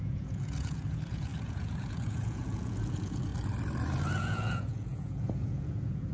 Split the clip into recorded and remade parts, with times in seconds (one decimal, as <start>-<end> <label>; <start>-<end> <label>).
0.0-3.3 remade; 3.3-4.2 recorded; 4.2-6.1 remade